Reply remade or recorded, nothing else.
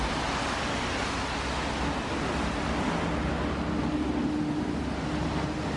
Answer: recorded